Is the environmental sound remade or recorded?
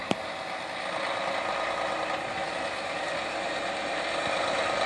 recorded